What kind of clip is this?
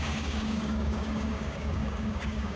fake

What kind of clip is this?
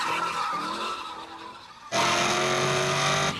real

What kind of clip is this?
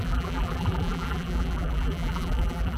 fake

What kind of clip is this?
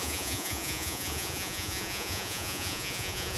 fake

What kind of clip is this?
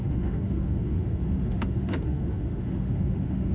fake